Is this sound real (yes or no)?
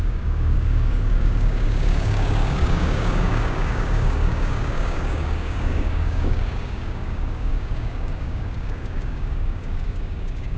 no